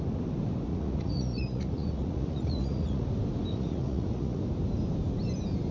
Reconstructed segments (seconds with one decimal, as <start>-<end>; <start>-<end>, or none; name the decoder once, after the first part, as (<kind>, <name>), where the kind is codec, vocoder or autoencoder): 0.7-3.1 (vocoder, Vocos); 3.5-4.4